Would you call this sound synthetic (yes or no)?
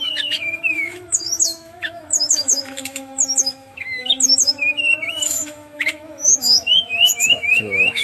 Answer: yes